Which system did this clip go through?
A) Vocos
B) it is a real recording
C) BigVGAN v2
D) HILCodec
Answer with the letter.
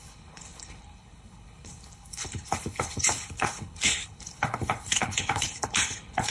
D